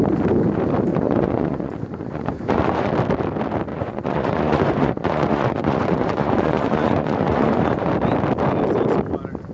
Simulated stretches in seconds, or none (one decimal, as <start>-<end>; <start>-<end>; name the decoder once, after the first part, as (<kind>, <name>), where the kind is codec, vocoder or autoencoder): 0.9-2.9 (vocoder, Vocos); 3.7-7.9